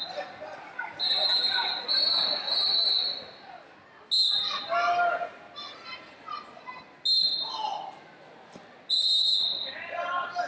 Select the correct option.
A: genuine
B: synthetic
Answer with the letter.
A